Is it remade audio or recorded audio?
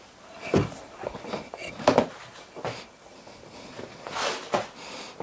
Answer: recorded